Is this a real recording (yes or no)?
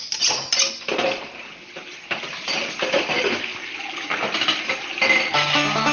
yes